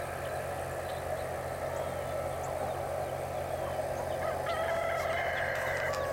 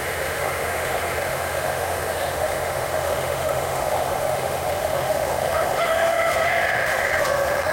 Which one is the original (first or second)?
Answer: first